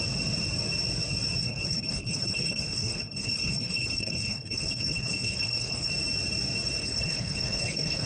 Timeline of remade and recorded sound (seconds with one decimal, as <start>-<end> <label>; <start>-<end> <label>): 0.0-1.4 recorded; 1.4-5.9 remade; 5.9-6.8 recorded; 6.8-8.1 remade